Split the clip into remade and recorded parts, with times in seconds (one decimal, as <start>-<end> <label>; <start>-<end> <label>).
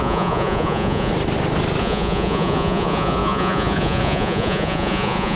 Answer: 0.0-1.1 remade; 1.1-1.8 recorded; 1.8-5.4 remade